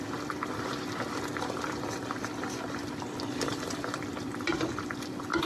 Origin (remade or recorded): remade